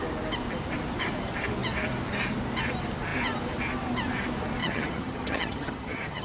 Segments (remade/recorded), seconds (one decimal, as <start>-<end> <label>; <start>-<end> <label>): 0.0-4.6 recorded; 4.6-6.2 remade